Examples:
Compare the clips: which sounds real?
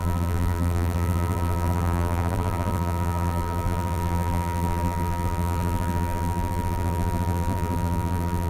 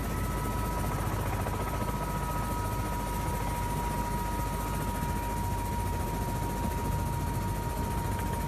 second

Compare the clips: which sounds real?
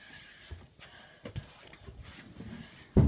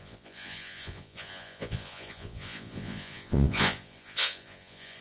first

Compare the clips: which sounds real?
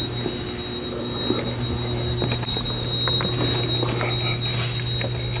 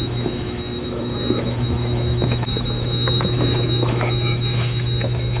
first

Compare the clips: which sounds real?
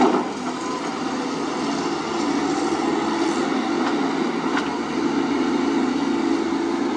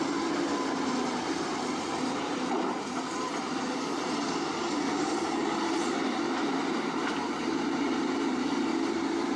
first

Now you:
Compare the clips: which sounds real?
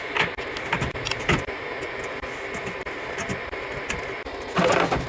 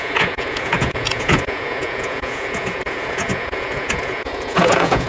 first